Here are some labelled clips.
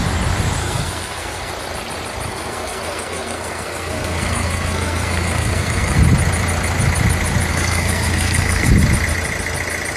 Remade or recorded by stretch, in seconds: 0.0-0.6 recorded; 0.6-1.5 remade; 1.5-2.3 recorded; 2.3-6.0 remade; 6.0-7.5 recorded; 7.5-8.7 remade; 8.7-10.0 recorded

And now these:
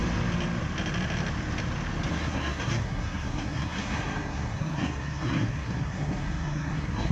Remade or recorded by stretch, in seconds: 0.0-2.1 recorded; 2.1-7.1 remade

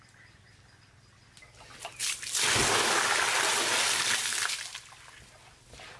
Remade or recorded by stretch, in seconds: 0.0-6.0 recorded

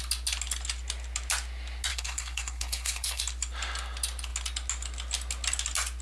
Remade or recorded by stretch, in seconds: 0.0-1.9 recorded; 1.9-3.2 remade; 3.2-6.0 recorded

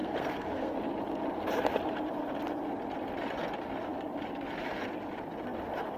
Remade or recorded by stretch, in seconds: 0.0-0.8 remade; 0.8-6.0 recorded

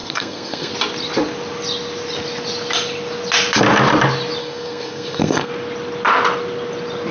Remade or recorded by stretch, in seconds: 0.0-0.7 remade; 0.7-4.4 recorded; 4.4-5.5 remade; 5.5-7.1 recorded